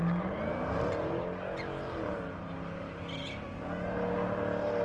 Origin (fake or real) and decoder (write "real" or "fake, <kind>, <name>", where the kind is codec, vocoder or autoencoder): real